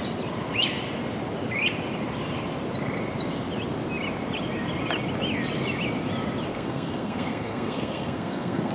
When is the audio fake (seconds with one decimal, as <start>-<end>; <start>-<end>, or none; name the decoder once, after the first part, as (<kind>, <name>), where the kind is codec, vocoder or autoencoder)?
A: 6.5-8.7 (codec, SNAC)